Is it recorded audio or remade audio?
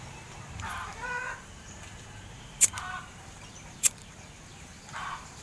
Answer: remade